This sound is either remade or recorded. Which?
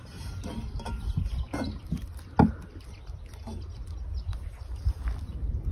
recorded